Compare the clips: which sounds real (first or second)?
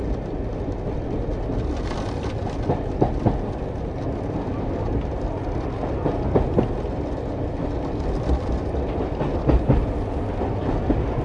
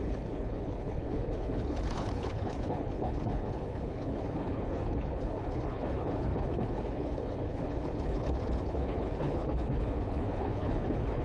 first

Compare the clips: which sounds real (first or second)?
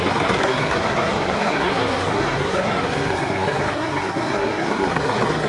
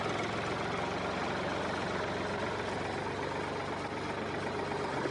second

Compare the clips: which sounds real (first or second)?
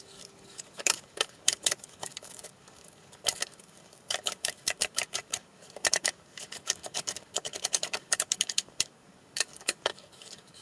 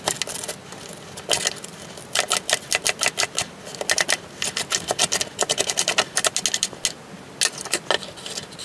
second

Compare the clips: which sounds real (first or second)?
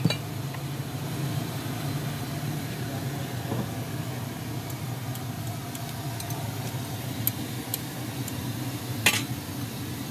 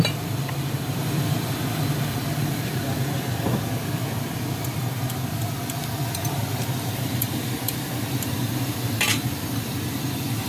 first